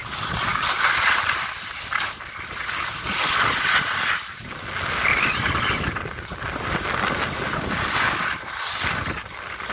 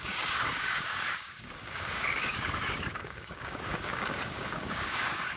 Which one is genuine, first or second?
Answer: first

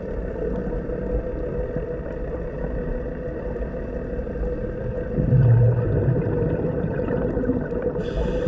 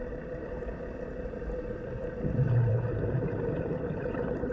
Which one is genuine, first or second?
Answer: first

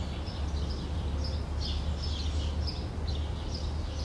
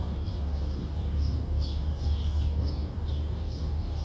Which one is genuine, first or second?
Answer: first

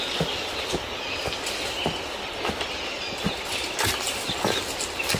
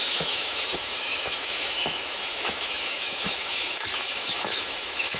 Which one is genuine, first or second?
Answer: first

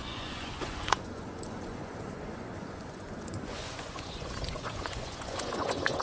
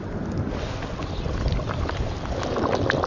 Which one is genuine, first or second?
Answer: second